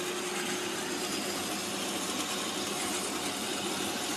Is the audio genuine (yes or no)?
yes